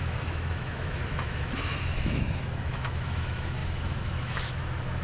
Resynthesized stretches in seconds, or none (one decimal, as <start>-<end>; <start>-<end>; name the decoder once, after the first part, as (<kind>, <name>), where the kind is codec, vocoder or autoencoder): 0.0-5.0 (autoencoder, DAC-VAE)